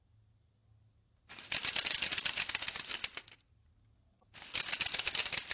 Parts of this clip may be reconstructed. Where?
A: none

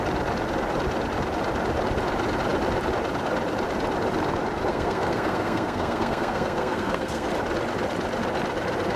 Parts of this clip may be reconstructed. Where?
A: 4.7-7.3 (codec, SNAC)